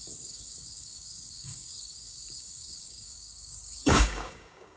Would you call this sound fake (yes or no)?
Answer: yes